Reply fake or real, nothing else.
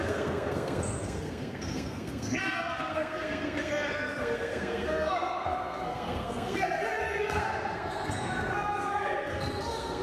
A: fake